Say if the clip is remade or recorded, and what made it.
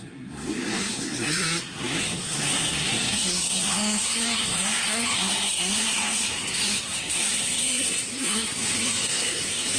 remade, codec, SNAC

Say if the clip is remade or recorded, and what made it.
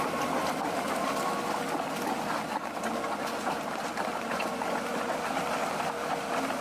recorded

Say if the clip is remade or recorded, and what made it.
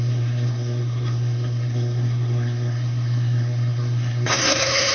remade, codec, SNAC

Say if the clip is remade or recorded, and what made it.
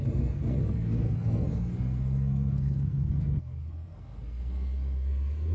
remade, codec, SNAC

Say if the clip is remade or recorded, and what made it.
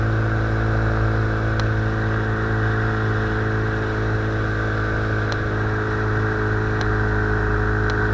recorded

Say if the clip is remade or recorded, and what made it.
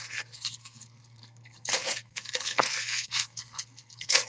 remade, codec, SNAC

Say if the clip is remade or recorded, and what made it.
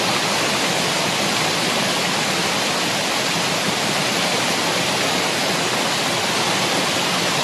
recorded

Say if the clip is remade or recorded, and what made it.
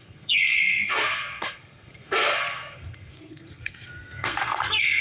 remade, codec, SNAC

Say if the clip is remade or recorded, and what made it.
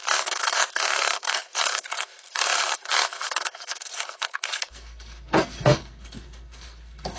remade, codec, SNAC